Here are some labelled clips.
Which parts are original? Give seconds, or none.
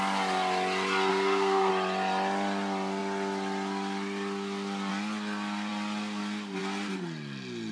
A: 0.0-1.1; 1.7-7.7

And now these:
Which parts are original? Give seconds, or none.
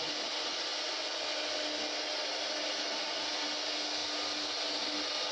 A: 0.0-5.3